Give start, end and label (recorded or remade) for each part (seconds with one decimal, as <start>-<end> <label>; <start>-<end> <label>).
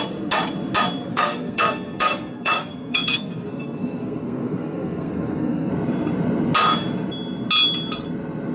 0.0-1.1 recorded; 1.1-5.7 remade; 5.7-8.5 recorded